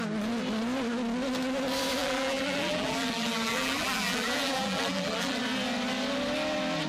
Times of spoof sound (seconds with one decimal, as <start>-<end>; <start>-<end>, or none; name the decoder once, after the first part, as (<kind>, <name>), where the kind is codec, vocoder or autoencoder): 2.0-5.4 (vocoder, BigVGAN v2)